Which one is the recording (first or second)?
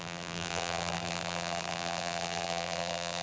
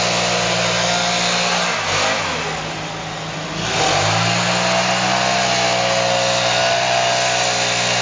second